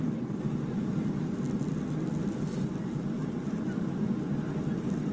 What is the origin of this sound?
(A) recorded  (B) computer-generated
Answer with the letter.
A